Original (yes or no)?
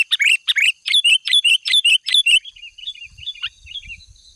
no